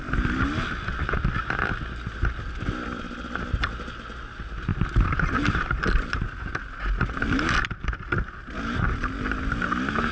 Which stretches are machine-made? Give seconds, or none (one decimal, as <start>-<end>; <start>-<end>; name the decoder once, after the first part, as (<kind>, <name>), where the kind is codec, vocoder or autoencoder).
4.7-5.7 (vocoder, BigVGAN v2)